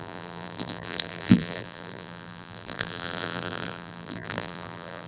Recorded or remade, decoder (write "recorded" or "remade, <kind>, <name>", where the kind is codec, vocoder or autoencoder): remade, vocoder, BigVGAN v2